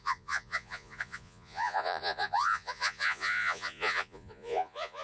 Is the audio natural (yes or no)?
no